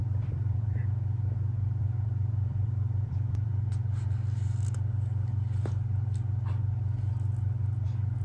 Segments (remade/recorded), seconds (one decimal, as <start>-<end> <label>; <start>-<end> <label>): 0.0-0.8 remade; 0.8-1.8 recorded; 1.8-3.5 remade; 3.5-8.2 recorded